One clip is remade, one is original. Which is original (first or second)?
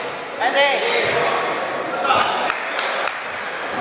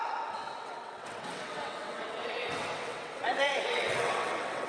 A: first